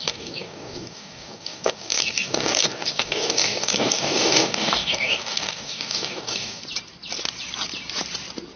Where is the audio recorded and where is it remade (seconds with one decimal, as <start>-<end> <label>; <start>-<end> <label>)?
0.0-6.6 remade; 6.6-8.6 recorded